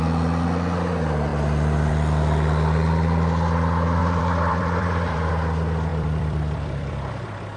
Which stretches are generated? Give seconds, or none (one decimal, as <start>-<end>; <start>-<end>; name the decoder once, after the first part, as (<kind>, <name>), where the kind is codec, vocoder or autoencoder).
1.3-1.9 (vocoder, BigVGAN v2); 4.0-5.3; 5.9-7.6